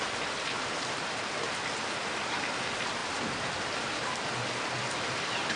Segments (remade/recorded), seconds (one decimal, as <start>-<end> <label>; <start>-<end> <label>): 0.0-5.6 recorded